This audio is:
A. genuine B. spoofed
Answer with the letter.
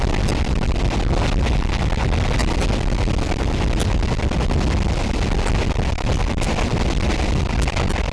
A